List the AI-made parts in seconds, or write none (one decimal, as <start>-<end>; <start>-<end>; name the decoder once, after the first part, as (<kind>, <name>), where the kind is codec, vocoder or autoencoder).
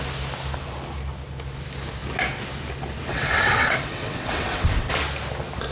3.1-4.9 (vocoder, WaveNeXt)